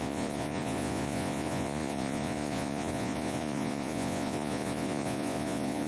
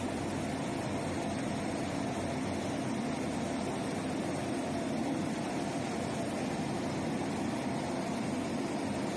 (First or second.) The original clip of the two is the second